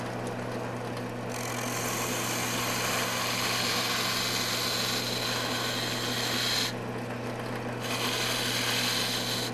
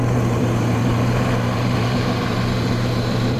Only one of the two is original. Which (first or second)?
first